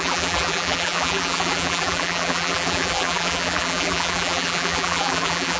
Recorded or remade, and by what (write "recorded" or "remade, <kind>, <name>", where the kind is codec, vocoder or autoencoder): remade, vocoder, BigVGAN v2